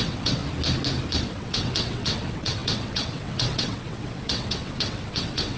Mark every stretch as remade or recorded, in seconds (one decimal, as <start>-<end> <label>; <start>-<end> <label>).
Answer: 0.0-0.4 remade; 0.4-1.3 recorded; 1.3-5.6 remade